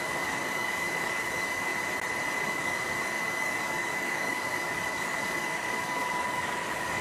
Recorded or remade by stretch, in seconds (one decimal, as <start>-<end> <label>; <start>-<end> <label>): 0.0-1.7 remade; 1.7-2.4 recorded; 2.4-7.0 remade